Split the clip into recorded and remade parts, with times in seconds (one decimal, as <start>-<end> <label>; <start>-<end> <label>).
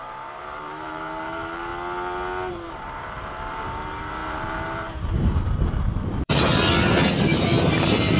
0.0-1.7 remade; 1.7-2.5 recorded; 2.5-6.5 remade; 6.5-8.2 recorded